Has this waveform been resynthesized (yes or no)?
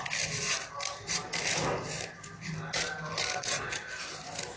no